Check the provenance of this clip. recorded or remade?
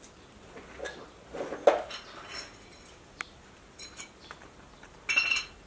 recorded